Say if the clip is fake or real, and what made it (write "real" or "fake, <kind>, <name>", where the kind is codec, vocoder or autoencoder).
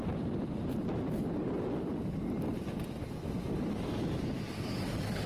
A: real